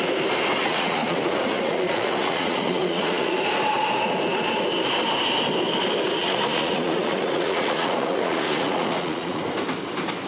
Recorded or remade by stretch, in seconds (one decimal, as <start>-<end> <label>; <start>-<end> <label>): 0.0-0.6 recorded; 0.6-3.4 remade; 3.4-6.2 recorded; 6.2-9.4 remade; 9.4-10.3 recorded